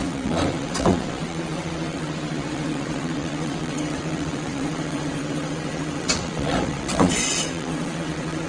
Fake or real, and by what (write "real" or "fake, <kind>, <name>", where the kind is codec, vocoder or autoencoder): fake, vocoder, WaveNeXt